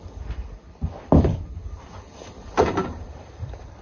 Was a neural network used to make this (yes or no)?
yes